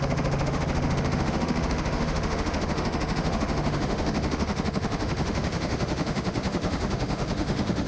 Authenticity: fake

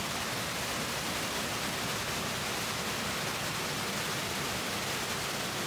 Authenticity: real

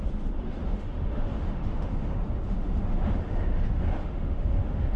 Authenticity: fake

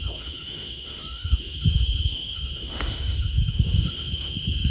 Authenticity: fake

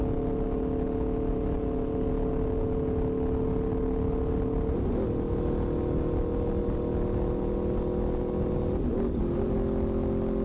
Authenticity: real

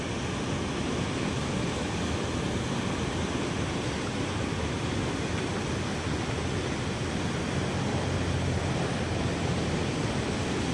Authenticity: real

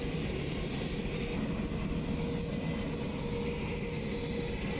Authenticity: real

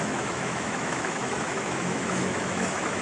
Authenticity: fake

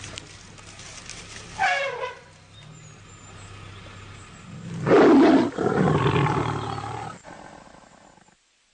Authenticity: real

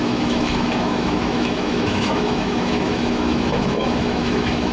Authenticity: fake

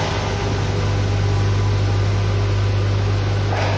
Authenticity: real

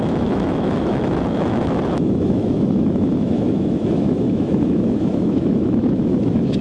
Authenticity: fake